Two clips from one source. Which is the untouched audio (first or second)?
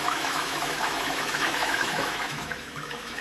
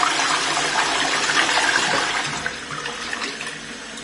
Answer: second